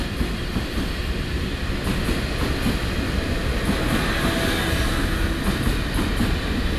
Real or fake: real